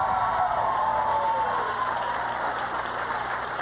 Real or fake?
fake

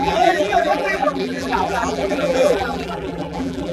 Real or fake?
fake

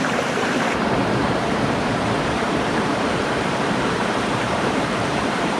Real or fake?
fake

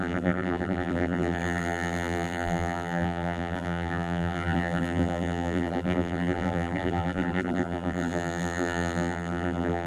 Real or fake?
fake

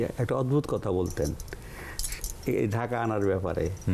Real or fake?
real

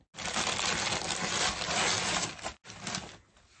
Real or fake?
real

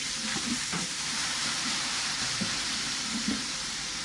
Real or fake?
fake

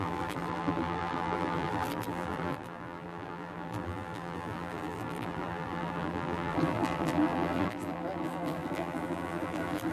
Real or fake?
fake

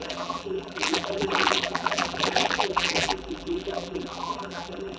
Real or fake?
fake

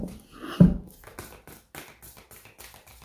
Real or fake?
real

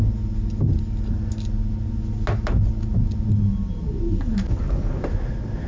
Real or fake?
real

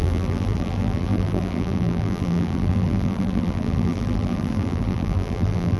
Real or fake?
fake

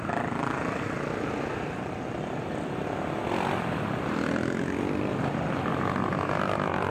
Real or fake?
real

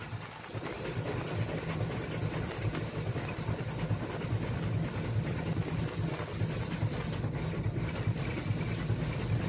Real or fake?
real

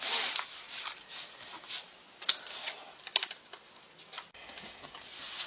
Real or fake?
real